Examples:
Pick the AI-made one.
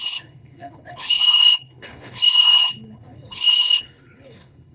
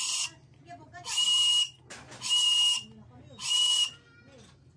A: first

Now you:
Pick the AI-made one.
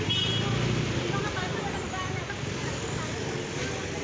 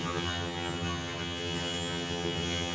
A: second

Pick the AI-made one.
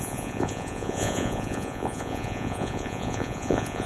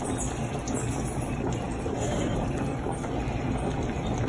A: first